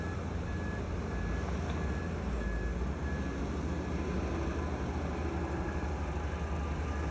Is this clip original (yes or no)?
yes